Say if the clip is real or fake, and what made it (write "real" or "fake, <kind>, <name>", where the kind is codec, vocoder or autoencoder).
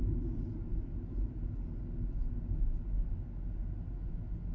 real